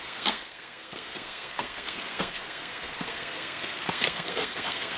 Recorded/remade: remade